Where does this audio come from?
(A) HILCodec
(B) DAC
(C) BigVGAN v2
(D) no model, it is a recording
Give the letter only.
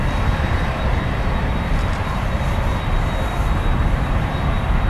D